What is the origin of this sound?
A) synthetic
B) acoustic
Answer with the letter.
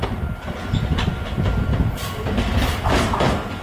B